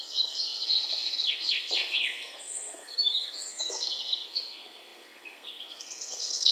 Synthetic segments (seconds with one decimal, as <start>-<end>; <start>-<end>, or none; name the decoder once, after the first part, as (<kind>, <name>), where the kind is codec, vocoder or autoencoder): 0.0-6.5 (codec, SNAC)